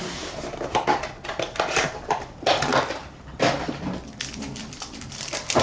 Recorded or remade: remade